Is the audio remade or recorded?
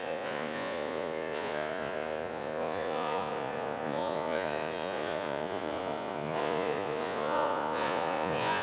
remade